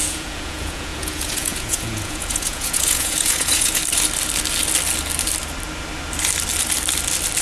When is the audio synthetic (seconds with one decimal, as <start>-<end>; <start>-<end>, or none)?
0.0-3.8